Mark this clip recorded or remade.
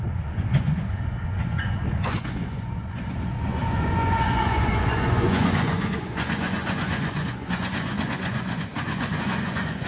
remade